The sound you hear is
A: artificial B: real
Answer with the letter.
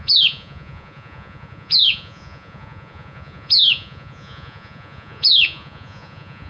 A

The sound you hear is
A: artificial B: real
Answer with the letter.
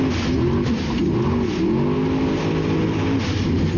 B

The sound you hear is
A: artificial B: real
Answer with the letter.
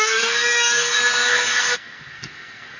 A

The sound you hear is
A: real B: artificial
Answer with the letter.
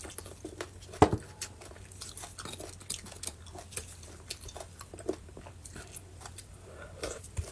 A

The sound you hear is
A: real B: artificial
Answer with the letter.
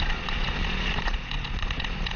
B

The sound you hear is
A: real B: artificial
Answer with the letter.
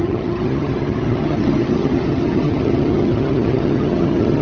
B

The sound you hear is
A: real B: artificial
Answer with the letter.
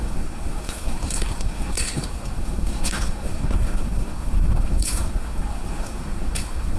B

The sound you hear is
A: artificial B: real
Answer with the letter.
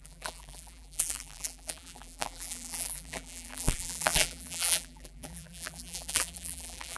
A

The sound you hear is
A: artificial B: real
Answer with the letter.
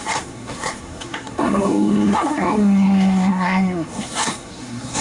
A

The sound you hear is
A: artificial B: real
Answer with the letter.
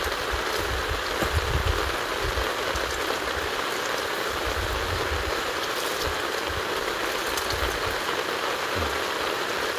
B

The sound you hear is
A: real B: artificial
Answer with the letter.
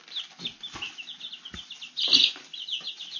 A